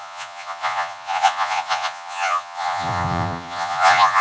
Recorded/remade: remade